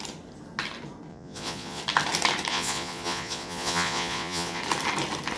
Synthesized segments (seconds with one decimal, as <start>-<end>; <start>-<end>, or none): 1.1-1.8; 2.5-4.6